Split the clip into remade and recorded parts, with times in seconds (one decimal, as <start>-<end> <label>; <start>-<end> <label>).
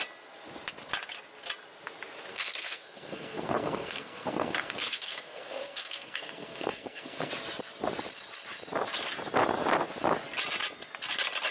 0.0-2.3 recorded; 2.3-7.3 remade; 7.3-11.5 recorded